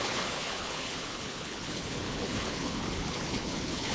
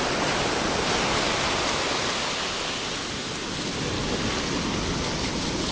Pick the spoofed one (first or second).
first